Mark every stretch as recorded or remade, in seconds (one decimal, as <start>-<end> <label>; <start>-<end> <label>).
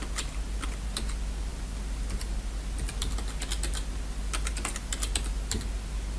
0.0-6.2 recorded